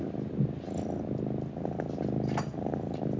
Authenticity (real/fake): real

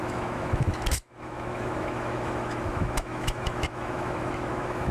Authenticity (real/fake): fake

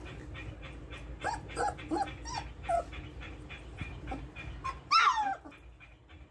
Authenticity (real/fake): real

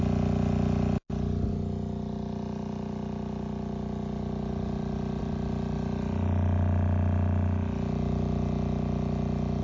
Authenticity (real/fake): real